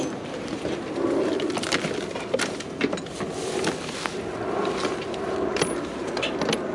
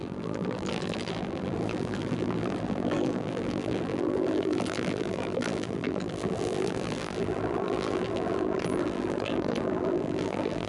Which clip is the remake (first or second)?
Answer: second